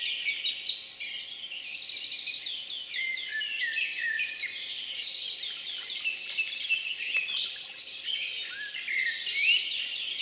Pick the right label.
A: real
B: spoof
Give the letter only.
A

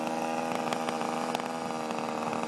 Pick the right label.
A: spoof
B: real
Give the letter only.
B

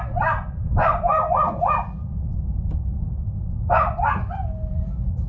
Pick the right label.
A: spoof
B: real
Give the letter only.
B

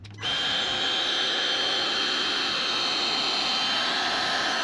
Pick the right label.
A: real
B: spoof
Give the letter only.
A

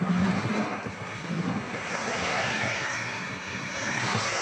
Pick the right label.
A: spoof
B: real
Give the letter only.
A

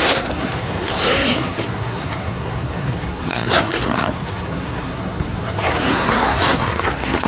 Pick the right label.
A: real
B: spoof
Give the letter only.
B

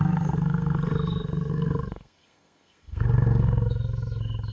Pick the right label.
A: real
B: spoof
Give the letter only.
B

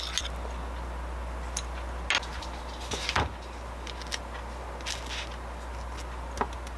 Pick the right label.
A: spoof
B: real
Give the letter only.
B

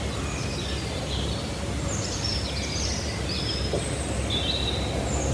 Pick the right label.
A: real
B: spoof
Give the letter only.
A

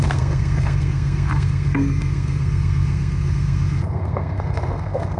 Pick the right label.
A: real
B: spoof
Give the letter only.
B